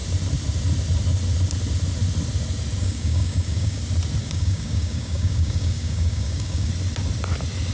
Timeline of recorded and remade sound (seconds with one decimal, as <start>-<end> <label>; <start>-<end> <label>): 0.0-2.8 recorded; 2.8-3.8 remade; 3.8-4.2 recorded; 4.2-6.7 remade; 6.7-7.7 recorded